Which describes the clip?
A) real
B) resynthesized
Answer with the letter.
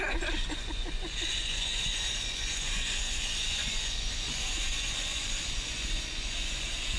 B